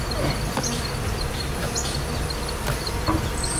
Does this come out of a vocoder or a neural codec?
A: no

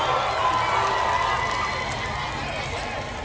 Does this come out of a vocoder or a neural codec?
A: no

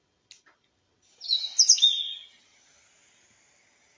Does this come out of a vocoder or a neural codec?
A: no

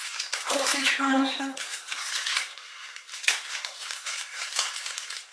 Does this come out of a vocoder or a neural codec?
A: yes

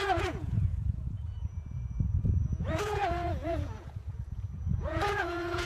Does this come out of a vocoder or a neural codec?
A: yes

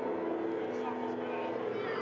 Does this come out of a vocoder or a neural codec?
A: no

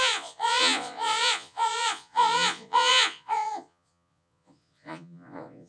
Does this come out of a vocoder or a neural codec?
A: yes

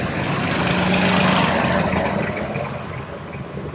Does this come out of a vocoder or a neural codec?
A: no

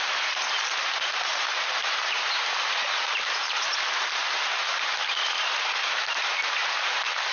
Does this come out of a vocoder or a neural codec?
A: yes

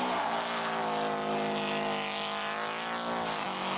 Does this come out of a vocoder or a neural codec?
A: no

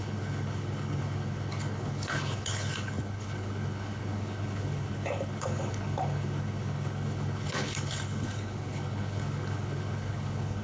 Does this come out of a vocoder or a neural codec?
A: yes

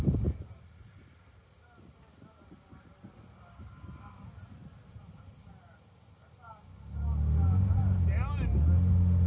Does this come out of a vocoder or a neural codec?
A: no